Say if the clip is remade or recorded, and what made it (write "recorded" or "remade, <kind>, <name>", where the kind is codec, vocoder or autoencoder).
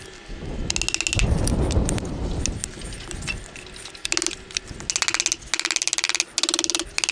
recorded